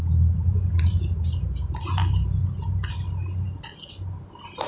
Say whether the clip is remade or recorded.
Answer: recorded